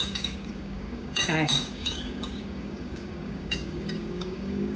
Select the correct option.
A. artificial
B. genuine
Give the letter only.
A